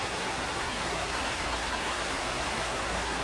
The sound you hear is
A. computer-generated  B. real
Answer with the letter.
A